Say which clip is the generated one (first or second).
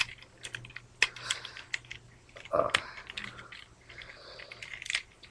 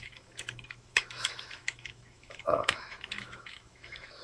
second